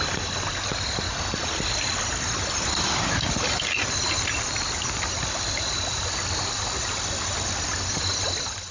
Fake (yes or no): no